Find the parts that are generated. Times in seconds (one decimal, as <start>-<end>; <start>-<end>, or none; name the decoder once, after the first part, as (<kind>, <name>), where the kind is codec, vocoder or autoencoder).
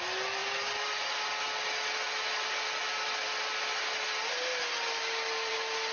none